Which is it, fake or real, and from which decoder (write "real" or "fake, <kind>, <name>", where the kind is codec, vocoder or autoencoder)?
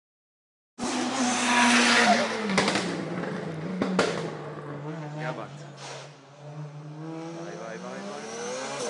real